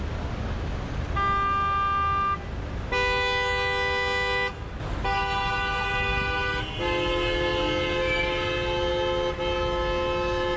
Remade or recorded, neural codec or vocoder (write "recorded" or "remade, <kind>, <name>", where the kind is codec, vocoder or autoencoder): recorded